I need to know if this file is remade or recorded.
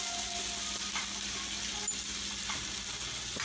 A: recorded